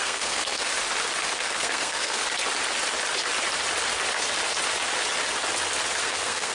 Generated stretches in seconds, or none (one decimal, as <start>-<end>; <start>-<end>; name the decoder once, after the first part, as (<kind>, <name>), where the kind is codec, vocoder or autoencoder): 0.0-0.7 (codec, SNAC); 1.3-2.2; 6.0-6.5